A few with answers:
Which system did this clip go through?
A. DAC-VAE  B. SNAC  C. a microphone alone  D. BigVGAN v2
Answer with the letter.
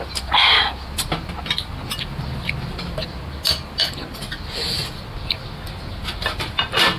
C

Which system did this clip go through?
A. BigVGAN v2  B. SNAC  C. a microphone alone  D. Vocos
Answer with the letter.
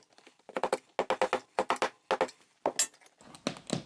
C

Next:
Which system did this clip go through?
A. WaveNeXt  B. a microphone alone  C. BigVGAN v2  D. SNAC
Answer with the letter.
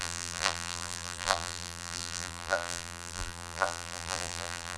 C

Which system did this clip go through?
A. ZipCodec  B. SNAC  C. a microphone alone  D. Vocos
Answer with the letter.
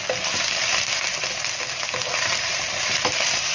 C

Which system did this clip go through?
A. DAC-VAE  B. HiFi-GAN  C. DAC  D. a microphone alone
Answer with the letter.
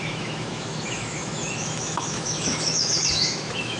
A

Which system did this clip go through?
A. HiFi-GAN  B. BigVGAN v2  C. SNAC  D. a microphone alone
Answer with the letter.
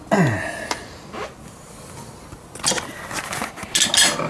D